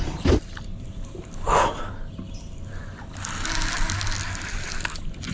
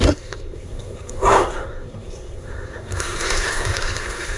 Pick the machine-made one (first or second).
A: second